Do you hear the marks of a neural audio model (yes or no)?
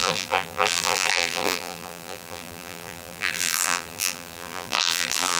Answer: yes